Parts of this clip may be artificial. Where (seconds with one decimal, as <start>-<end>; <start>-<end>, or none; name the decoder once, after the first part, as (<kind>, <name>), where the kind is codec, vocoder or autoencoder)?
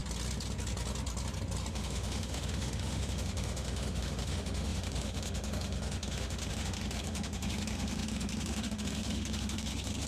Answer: 1.7-10.1 (autoencoder, DAC-VAE)